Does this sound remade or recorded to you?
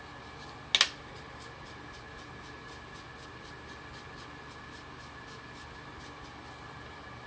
recorded